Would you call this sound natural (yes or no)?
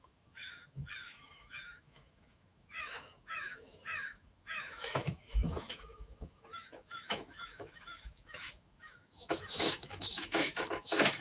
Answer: no